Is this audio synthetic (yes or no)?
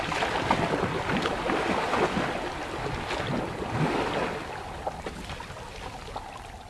no